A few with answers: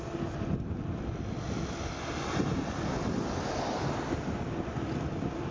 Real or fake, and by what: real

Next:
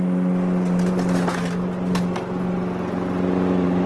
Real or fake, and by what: real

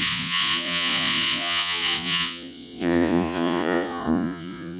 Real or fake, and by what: fake, vocoder, Vocos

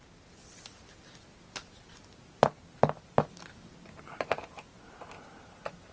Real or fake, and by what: real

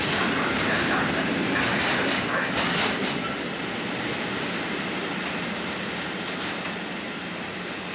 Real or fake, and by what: real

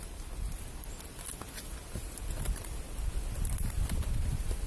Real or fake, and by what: real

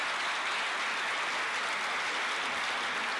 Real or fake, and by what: real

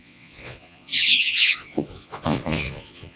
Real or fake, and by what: fake, vocoder, Vocos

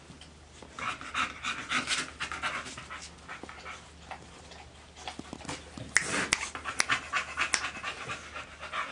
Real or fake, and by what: real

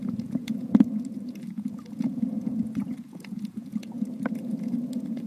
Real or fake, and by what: fake, vocoder, Vocos